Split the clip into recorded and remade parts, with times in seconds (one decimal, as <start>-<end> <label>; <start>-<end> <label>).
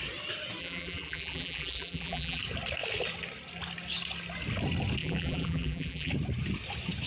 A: 0.0-0.6 recorded; 0.6-2.4 remade; 2.4-5.0 recorded; 5.0-6.1 remade; 6.1-7.1 recorded